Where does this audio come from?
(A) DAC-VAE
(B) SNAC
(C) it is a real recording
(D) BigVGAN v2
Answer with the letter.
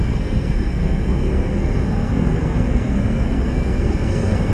B